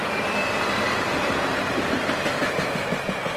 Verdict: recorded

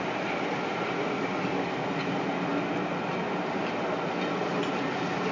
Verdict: recorded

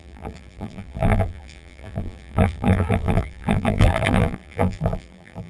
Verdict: remade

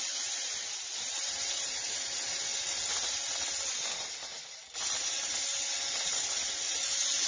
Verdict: recorded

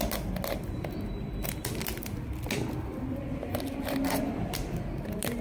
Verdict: recorded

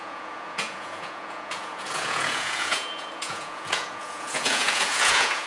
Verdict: remade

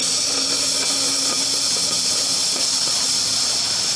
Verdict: recorded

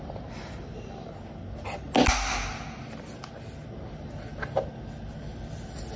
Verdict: recorded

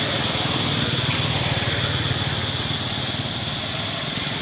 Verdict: recorded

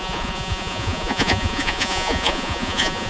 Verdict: remade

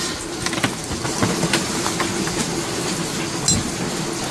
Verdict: recorded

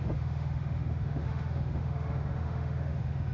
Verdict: remade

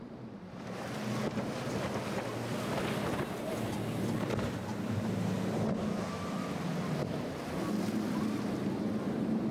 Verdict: recorded